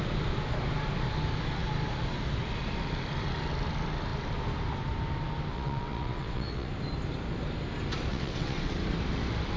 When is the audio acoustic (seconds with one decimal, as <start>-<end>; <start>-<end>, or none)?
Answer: 0.0-5.5; 6.7-8.1; 8.7-9.6